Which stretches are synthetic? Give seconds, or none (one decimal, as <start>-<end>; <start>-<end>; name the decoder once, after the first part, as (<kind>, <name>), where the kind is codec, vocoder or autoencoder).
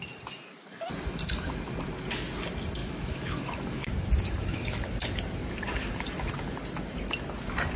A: 2.8-4.8 (autoencoder, DAC-VAE)